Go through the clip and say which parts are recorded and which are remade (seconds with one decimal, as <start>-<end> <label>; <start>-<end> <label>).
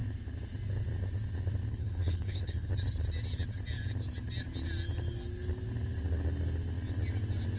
0.0-1.7 recorded; 1.7-2.7 remade; 2.7-7.6 recorded